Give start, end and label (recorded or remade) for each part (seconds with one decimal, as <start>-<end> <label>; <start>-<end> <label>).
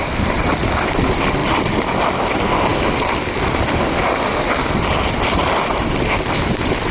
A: 0.0-6.9 recorded